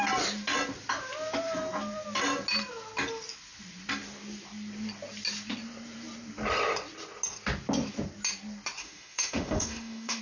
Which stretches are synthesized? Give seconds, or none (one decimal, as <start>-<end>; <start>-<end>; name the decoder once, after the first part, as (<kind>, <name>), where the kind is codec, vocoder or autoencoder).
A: 8.8-10.2 (autoencoder, DAC-VAE)

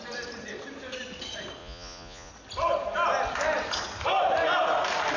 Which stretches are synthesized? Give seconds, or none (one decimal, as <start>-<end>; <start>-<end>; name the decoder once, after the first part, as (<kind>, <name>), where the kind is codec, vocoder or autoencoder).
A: 1.6-2.3 (vocoder, Vocos)

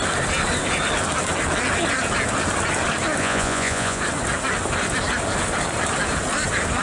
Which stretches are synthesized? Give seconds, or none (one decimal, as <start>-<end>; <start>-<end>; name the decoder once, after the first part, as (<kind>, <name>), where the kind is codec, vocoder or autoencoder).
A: 3.2-4.0 (vocoder, Vocos)

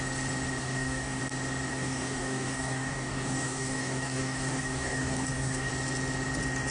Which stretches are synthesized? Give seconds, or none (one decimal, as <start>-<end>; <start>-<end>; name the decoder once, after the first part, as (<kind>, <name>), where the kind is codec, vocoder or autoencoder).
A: 0.6-1.2 (codec, DAC); 1.7-5.7

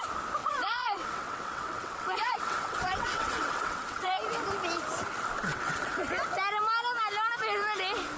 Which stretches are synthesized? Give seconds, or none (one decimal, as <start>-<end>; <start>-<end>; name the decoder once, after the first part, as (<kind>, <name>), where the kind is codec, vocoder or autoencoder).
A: 0.4-4.1 (vocoder, WaveNeXt); 5.5-6.0

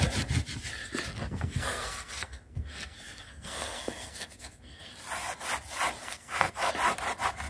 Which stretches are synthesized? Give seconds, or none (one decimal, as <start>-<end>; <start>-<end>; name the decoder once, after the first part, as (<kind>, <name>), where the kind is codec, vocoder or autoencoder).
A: 1.2-4.9 (codec, SNAC); 6.0-6.7

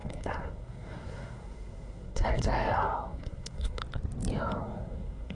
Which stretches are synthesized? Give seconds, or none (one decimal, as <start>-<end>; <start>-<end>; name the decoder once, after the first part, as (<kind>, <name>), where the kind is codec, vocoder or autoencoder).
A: 0.0-3.8 (codec, SNAC); 4.6-5.4